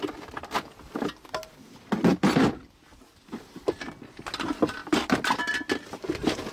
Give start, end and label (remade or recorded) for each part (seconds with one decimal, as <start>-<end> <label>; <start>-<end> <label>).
0.0-4.8 recorded; 4.8-5.4 remade; 5.4-6.5 recorded